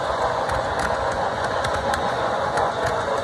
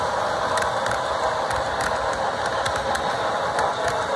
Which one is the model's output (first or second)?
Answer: first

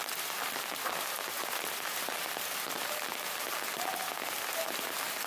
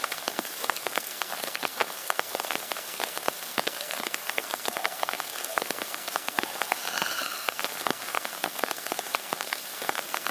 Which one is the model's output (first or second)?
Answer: second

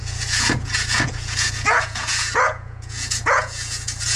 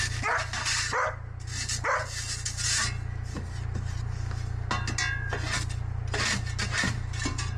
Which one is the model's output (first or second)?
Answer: first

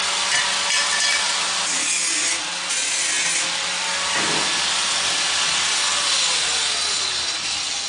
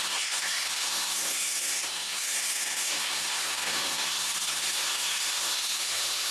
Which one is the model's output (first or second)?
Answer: second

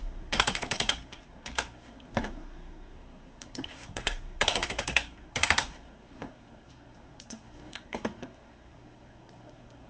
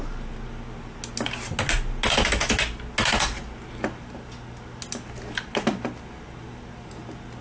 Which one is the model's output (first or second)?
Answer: first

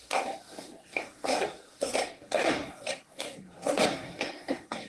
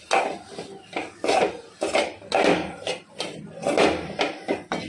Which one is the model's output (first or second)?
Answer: first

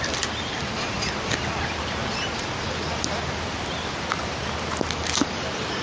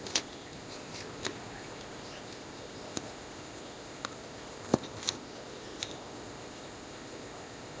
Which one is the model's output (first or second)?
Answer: second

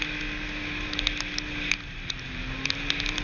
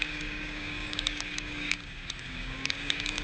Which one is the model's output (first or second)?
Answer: second